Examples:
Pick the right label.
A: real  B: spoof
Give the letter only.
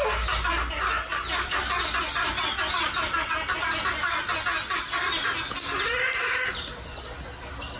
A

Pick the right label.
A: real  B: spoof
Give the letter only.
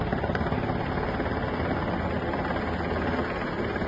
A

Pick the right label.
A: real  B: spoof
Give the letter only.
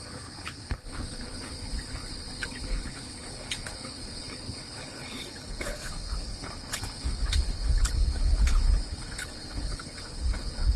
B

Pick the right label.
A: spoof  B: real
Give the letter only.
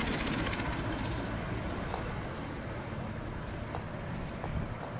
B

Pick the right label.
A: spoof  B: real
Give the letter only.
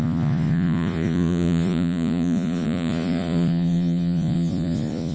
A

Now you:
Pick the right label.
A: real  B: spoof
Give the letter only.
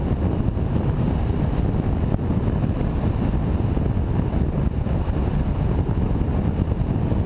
A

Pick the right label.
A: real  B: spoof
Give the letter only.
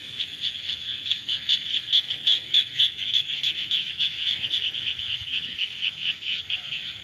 B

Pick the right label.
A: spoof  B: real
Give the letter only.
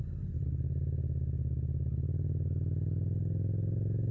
B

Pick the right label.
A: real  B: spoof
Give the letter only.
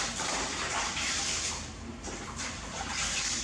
A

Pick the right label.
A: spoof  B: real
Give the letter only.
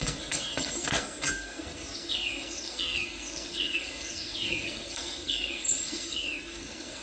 A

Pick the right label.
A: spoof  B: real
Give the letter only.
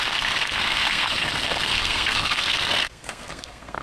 A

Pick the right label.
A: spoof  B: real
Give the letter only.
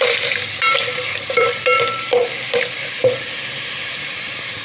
A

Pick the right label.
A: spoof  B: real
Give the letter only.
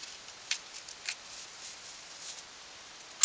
B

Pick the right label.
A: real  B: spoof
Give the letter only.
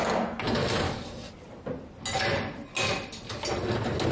A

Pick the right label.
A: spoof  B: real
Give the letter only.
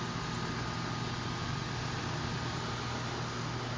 B